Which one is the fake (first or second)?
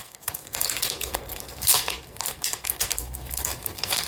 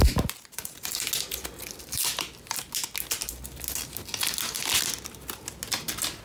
first